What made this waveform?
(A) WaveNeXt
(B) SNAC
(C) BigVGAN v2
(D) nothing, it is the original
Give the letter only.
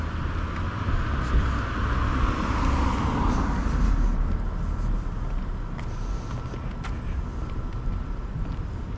D